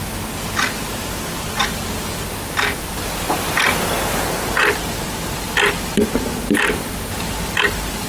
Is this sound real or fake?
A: real